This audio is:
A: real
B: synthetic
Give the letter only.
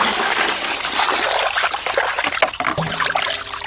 A